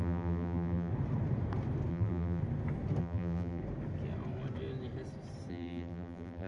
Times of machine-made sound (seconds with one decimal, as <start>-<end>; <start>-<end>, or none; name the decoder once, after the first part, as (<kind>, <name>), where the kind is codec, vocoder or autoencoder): 0.0-0.9 (vocoder, BigVGAN v2); 1.9-2.4; 3.0-3.6; 5.5-6.5